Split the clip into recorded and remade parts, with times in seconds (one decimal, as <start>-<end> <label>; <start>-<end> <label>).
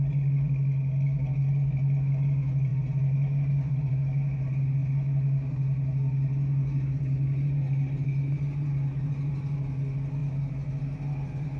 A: 0.0-11.6 recorded